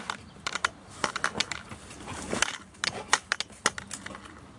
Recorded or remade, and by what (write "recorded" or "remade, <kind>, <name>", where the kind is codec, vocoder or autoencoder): recorded